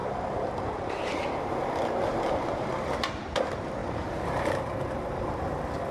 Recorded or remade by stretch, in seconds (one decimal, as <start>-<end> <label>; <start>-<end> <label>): 0.0-1.7 remade; 1.7-2.1 recorded; 2.1-2.7 remade; 2.7-3.8 recorded; 3.8-5.4 remade; 5.4-5.9 recorded